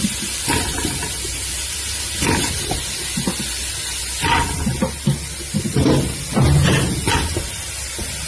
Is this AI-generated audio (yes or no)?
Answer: no